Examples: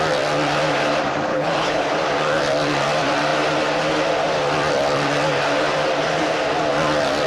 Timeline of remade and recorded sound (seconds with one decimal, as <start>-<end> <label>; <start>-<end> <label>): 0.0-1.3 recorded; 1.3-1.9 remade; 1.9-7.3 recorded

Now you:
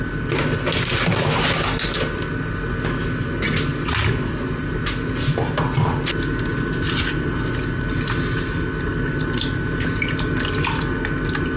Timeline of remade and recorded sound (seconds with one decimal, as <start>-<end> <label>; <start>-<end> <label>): 0.0-11.6 recorded

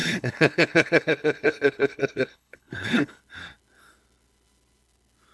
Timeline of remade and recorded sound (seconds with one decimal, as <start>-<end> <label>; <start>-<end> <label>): 0.0-3.2 remade; 3.2-5.3 recorded

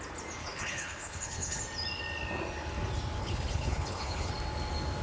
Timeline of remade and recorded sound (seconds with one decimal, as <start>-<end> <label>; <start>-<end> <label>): 0.0-0.4 recorded; 0.4-1.6 remade; 1.6-3.2 recorded; 3.2-4.3 remade; 4.3-5.0 recorded